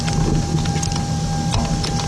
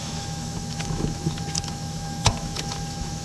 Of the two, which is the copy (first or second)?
second